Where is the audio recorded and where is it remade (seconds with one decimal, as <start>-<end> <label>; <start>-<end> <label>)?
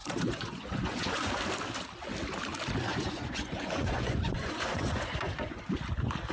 0.0-1.3 remade; 1.3-2.9 recorded; 2.9-5.6 remade; 5.6-6.3 recorded